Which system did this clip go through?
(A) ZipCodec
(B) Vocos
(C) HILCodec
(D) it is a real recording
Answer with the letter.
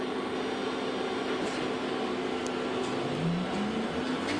D